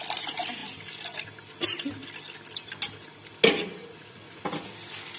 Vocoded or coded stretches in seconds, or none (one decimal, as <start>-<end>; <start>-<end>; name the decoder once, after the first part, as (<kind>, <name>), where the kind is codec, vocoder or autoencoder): 3.8-4.4 (vocoder, Vocos)